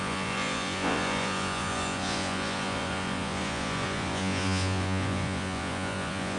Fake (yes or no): yes